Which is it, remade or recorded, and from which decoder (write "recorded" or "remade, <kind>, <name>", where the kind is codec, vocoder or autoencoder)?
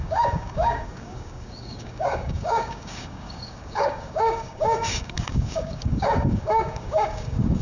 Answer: remade, codec, DAC